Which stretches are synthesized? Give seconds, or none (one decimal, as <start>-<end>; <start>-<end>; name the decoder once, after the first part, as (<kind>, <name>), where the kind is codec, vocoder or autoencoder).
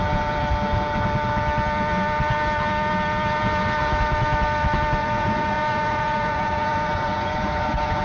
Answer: 5.0-8.0 (vocoder, Vocos)